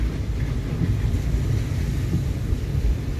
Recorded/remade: recorded